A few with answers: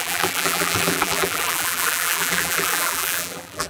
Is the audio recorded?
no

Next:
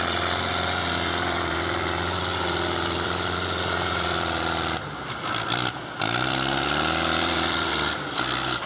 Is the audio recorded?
no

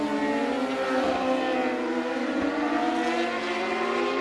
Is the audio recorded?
yes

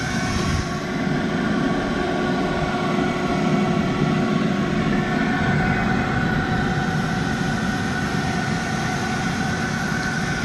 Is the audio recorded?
yes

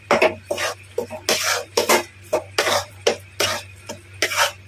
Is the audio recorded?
yes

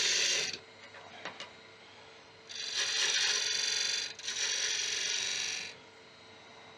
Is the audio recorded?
yes